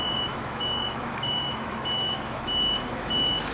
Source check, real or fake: fake